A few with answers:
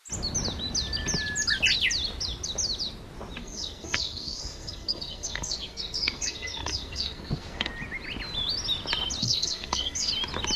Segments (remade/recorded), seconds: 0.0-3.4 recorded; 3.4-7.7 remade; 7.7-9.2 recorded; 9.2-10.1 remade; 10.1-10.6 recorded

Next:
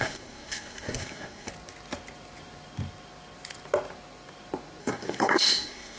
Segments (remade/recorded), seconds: 0.0-1.5 remade; 1.5-4.8 recorded; 4.8-6.0 remade

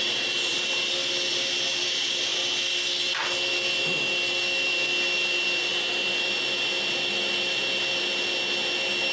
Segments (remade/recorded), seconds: 0.0-9.1 recorded

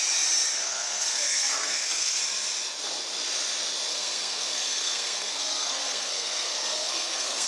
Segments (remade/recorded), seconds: 0.0-0.7 recorded; 0.7-2.2 remade; 2.2-3.9 recorded; 3.9-7.5 remade

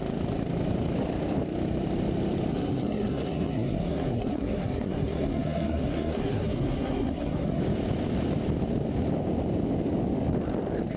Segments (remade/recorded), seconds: 0.0-2.5 recorded; 2.5-7.6 remade; 7.6-11.0 recorded